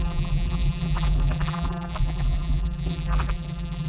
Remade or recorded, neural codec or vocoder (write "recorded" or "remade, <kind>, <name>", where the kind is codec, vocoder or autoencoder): remade, vocoder, BigVGAN v2